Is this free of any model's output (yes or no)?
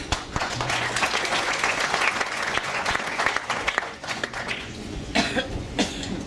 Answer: no